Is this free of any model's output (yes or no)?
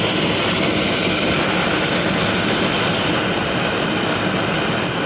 yes